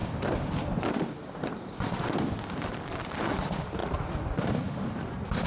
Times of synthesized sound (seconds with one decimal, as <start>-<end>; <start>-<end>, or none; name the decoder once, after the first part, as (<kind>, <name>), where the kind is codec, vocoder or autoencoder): 0.0-3.3 (vocoder, BigVGAN v2)